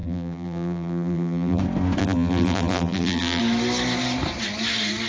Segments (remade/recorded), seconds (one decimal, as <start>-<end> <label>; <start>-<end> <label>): 0.0-1.6 remade; 1.6-2.0 recorded; 2.0-3.4 remade; 3.4-5.1 recorded